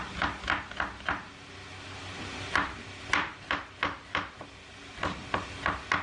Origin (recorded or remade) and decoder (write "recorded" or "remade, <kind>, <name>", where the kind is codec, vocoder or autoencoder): recorded